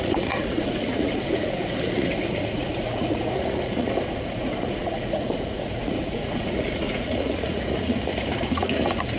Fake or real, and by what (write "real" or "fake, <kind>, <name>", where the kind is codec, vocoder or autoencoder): fake, vocoder, Vocos